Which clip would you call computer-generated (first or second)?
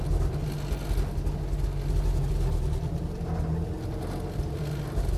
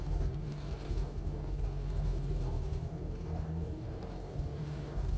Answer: second